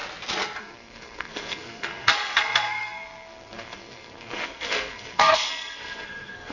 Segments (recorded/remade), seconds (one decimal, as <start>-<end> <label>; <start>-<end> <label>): 0.0-0.6 recorded; 0.6-6.5 remade